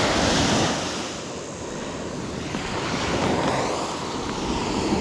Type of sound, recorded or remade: recorded